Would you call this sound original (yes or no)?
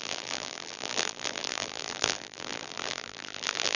no